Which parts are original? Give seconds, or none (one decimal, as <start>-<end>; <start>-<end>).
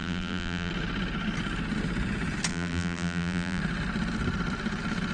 0.7-2.5; 3.6-5.1